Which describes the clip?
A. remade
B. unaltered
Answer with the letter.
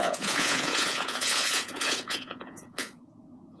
A